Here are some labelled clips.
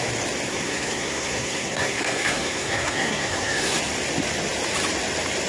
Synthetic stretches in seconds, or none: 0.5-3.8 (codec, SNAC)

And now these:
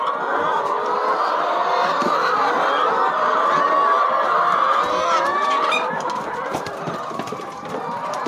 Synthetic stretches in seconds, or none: 0.0-1.6 (vocoder, BigVGAN v2); 5.9-8.3

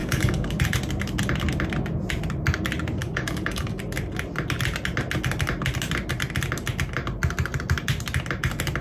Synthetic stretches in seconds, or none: 0.0-0.6 (codec, DAC); 3.0-3.8